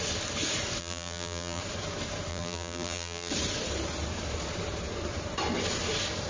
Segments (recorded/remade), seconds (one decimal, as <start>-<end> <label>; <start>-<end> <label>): 0.0-0.8 recorded; 0.8-1.6 remade; 1.6-2.3 recorded; 2.3-3.3 remade; 3.3-6.3 recorded